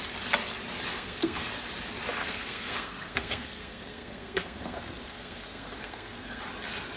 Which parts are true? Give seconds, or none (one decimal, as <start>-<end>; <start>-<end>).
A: 0.0-0.9; 1.5-2.2; 6.4-7.0